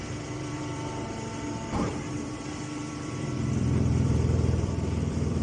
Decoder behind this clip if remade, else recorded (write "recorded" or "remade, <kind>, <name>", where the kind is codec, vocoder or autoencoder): remade, vocoder, BigVGAN v2